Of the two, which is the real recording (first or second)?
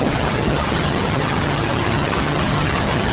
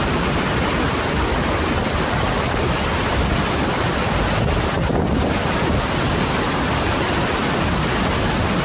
second